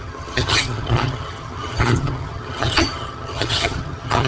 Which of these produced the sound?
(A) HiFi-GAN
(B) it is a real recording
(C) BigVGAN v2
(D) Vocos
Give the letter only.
A